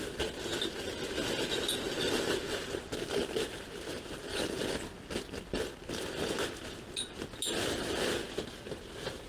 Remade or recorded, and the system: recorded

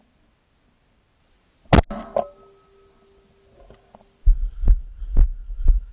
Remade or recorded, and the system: recorded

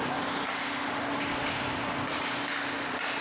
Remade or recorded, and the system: recorded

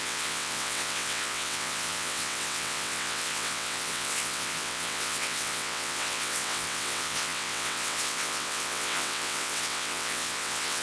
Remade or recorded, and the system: remade, vocoder, WaveNeXt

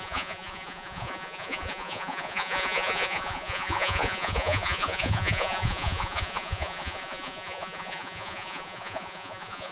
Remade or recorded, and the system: remade, vocoder, Vocos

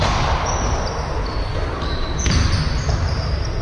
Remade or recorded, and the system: recorded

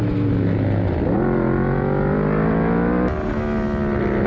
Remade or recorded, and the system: recorded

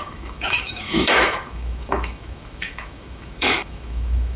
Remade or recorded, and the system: remade, autoencoder, DAC-VAE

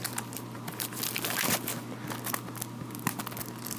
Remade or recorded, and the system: recorded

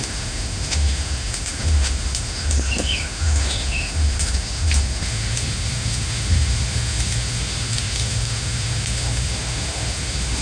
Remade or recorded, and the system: remade, autoencoder, DAC-VAE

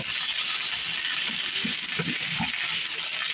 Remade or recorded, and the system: recorded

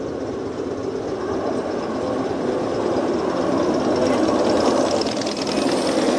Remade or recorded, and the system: recorded